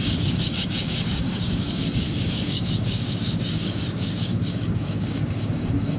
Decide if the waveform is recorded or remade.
remade